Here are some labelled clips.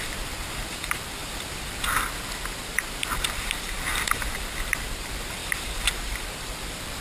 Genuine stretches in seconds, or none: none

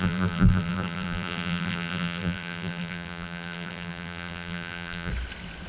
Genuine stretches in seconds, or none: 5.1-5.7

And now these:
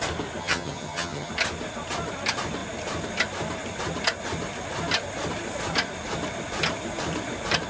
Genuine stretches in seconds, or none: 0.0-0.4; 1.3-7.7